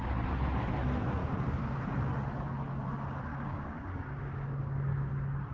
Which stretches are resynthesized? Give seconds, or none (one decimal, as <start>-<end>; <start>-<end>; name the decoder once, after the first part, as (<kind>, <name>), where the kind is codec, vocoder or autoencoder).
1.2-1.8 (codec, DAC); 3.3-5.1